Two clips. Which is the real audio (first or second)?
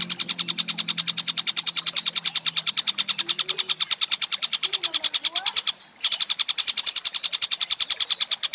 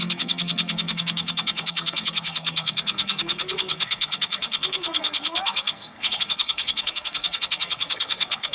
first